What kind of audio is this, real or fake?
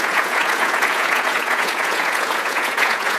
fake